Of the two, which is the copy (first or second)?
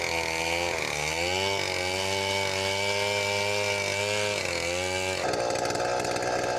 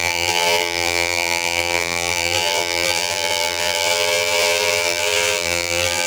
second